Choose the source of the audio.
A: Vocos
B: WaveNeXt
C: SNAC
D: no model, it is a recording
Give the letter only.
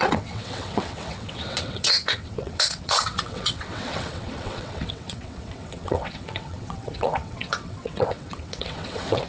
B